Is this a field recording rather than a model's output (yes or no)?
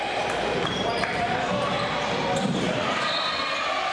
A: yes